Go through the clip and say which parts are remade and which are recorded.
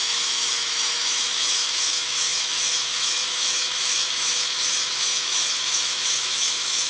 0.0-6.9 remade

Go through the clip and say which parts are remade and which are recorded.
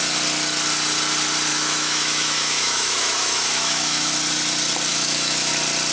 0.0-1.5 recorded; 1.5-4.1 remade; 4.1-4.9 recorded; 4.9-5.5 remade; 5.5-5.9 recorded